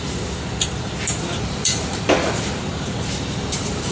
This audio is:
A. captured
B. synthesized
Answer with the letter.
B